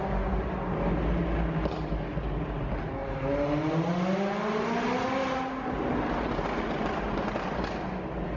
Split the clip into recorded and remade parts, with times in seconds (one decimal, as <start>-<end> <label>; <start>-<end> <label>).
0.0-8.4 recorded